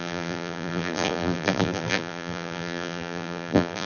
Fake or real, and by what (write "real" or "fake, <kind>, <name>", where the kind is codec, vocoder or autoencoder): fake, vocoder, BigVGAN v2